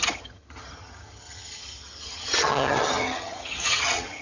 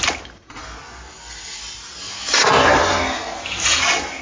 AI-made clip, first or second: first